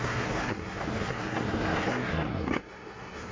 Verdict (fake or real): fake